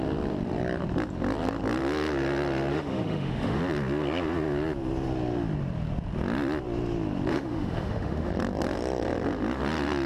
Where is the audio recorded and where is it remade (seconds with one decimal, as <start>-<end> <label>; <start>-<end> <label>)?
0.0-2.7 recorded; 2.7-3.6 remade; 3.6-7.3 recorded; 7.3-8.3 remade; 8.3-10.1 recorded